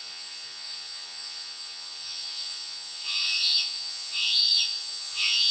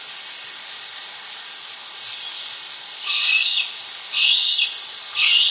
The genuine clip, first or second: second